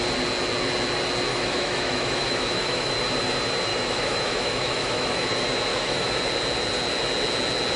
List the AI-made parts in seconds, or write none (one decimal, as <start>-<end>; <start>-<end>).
1.3-2.9; 3.7-5.3; 5.7-6.2

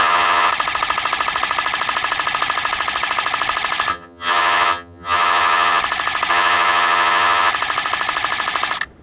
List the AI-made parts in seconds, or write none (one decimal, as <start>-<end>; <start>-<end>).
0.0-0.5; 3.9-5.8; 6.3-7.5

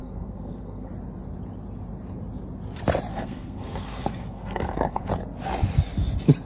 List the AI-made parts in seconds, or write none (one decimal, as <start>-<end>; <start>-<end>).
0.0-0.9; 3.1-5.1

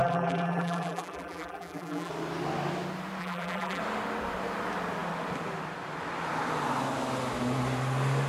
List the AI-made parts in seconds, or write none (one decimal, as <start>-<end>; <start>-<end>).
0.0-2.1; 3.2-3.8

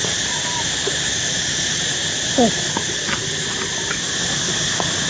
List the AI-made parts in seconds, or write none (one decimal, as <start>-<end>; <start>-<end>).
none